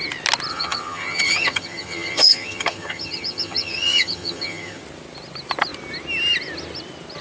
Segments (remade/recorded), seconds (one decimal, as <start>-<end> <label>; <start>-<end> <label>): 0.0-0.5 recorded; 0.5-4.8 remade; 4.8-7.2 recorded